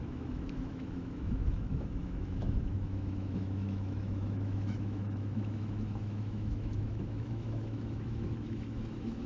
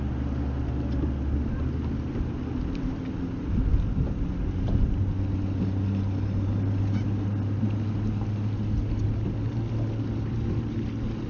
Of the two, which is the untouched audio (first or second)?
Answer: second